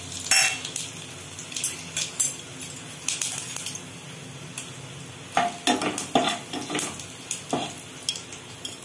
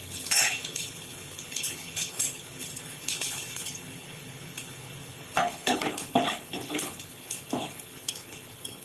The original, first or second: first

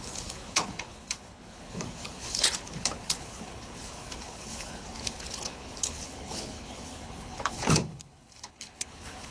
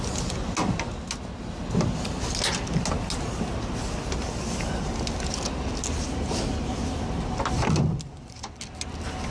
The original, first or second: second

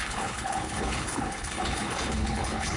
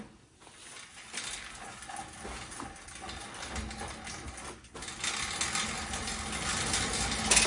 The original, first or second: second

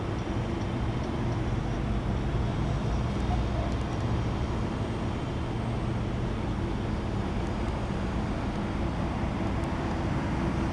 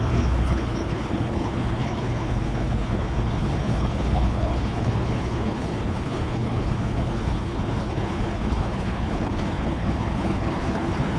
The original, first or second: first